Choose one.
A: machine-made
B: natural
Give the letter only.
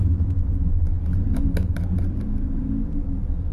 A